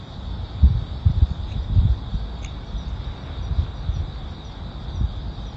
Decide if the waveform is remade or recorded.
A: recorded